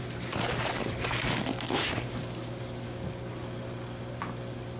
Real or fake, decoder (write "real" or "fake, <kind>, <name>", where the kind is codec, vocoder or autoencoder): real